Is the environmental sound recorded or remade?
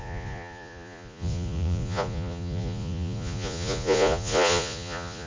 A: remade